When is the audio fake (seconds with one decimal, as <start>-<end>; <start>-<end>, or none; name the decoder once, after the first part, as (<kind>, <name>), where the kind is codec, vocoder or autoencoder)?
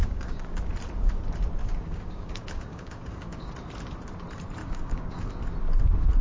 0.0-0.6 (codec, DAC); 1.6-3.5; 4.6-5.3